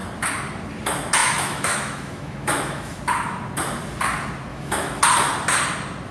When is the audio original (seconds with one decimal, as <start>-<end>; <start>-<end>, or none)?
0.0-1.2; 3.0-4.5; 5.0-6.1